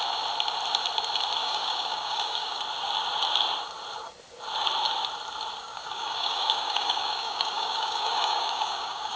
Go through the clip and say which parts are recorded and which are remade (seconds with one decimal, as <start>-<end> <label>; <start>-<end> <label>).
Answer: 0.0-1.4 recorded; 1.4-2.6 remade; 2.6-5.6 recorded; 5.6-9.2 remade